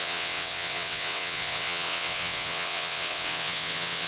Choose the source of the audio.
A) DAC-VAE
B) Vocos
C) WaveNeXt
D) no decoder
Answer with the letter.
C